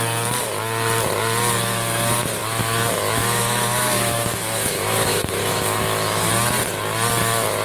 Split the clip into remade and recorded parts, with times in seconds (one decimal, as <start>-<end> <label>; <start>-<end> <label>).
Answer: 0.0-2.4 recorded; 2.4-6.3 remade; 6.3-7.6 recorded